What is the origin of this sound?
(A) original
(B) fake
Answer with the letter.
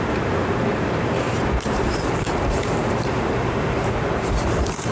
B